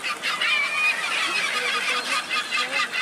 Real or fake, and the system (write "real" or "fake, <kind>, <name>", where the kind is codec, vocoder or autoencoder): real